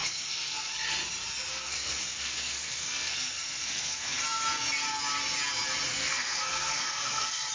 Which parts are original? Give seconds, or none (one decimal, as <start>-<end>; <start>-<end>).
0.7-1.5; 4.2-5.9